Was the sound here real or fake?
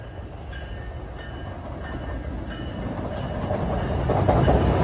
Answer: real